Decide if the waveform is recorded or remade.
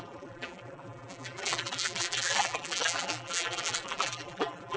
remade